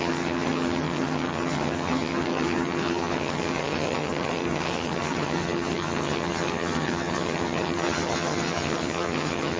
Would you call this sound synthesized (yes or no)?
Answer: yes